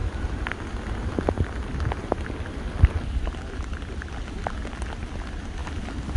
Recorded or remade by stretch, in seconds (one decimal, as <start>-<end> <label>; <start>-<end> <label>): 0.0-6.2 recorded